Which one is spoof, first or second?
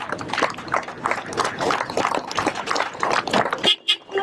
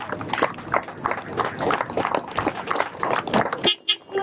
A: first